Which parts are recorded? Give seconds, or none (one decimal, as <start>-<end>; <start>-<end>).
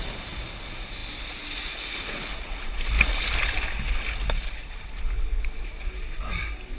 0.0-6.8